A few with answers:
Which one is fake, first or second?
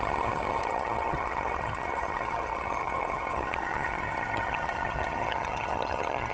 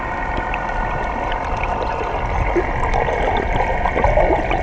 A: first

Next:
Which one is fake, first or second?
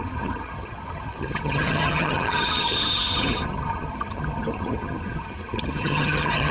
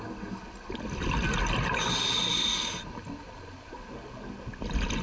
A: first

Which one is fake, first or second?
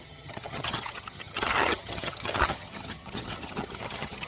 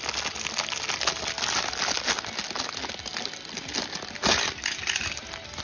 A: first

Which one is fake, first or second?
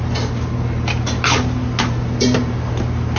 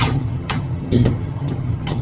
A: second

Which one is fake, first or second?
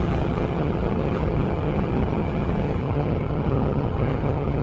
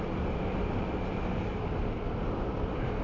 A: first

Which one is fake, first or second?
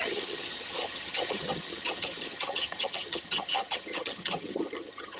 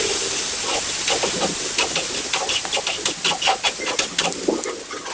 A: first